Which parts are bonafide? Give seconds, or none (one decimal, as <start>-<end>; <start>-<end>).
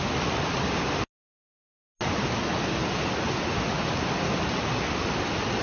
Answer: 0.0-5.6